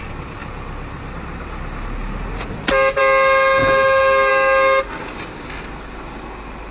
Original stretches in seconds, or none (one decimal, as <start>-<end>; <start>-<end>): 0.0-6.7